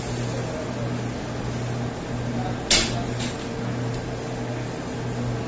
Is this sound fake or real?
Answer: real